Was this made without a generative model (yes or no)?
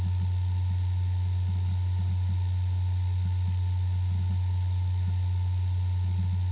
yes